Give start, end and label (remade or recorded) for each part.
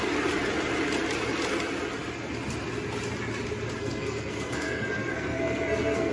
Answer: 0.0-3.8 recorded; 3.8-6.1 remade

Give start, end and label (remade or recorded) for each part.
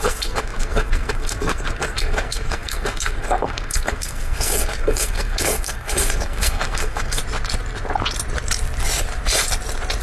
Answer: 0.0-7.2 remade; 7.2-10.0 recorded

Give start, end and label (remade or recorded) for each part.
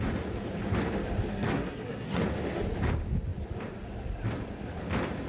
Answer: 0.0-1.3 recorded; 1.3-2.2 remade; 2.2-5.3 recorded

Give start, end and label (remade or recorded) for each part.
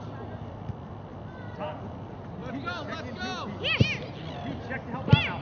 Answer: 0.0-5.4 recorded